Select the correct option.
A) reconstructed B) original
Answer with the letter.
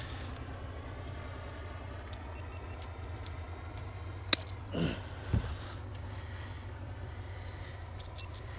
B